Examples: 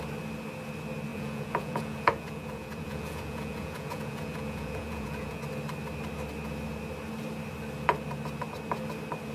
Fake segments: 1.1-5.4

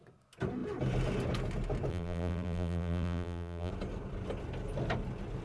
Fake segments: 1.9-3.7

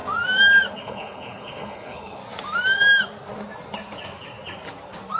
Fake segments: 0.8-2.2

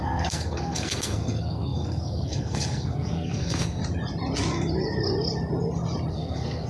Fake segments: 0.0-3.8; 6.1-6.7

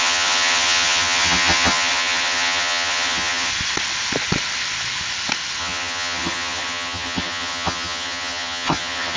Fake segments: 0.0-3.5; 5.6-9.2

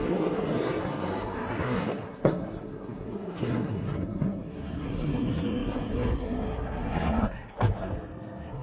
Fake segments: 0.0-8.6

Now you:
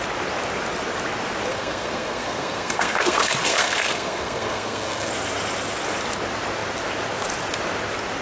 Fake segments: 1.5-5.1

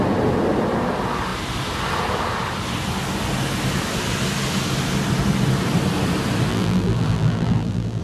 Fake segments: 6.5-8.0